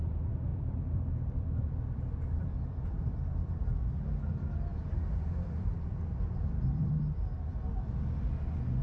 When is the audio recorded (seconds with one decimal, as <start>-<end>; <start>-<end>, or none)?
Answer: 0.0-0.5; 3.8-4.7; 7.0-8.8